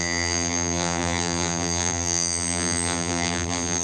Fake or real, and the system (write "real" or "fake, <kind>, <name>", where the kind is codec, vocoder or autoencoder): fake, vocoder, BigVGAN v2